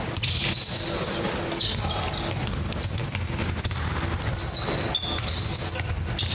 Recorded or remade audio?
recorded